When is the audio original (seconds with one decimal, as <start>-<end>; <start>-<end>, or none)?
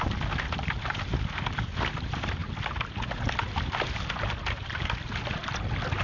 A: 0.0-6.0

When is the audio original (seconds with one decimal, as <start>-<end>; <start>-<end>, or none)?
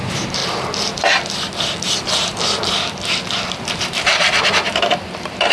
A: 0.4-3.7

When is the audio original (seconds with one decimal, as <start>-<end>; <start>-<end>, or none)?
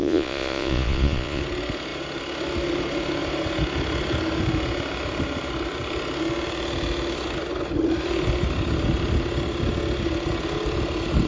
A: 1.4-11.3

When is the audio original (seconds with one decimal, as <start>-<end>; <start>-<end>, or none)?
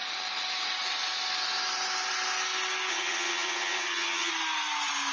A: 0.0-2.9; 4.3-5.1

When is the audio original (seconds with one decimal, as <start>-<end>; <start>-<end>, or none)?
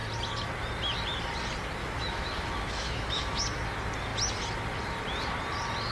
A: 0.0-1.8; 3.4-5.9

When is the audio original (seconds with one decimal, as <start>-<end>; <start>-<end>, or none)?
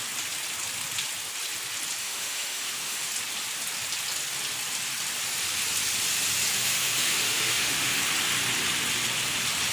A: 0.0-2.0; 3.1-6.6; 8.0-9.7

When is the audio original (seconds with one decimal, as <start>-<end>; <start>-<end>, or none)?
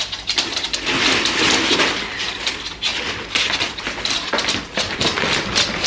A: 0.0-5.9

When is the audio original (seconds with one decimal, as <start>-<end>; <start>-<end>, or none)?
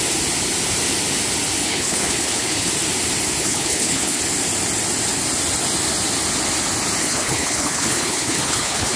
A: 0.0-1.6; 2.7-3.4; 4.2-7.0